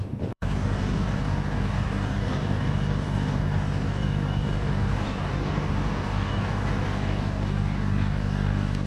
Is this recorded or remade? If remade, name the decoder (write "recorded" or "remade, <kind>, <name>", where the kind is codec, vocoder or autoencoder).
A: remade, codec, DAC